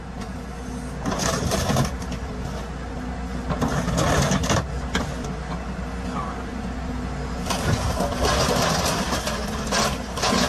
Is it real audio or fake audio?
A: real